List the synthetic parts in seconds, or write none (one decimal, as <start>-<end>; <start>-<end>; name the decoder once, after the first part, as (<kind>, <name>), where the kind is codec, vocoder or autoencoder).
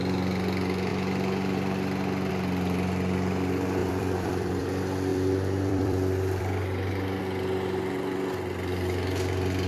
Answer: 3.8-4.6 (vocoder, BigVGAN v2); 5.1-7.2